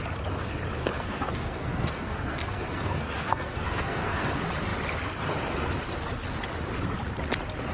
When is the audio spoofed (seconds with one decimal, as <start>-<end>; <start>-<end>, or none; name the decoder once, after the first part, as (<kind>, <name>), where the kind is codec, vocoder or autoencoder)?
0.8-4.3 (codec, SNAC)